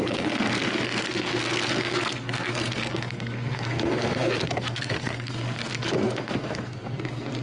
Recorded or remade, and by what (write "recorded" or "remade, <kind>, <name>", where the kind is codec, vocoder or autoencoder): remade, codec, SNAC